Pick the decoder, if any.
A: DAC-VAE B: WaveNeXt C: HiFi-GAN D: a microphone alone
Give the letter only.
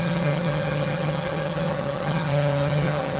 C